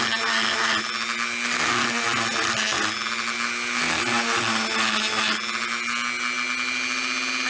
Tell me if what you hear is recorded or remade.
recorded